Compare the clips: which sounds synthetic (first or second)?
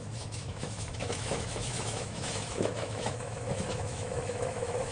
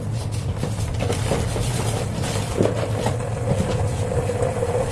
first